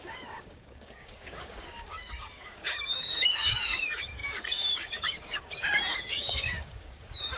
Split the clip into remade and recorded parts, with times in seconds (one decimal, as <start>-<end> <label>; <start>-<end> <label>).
0.0-7.4 remade